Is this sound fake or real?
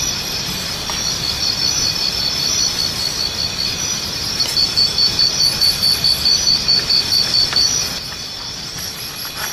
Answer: real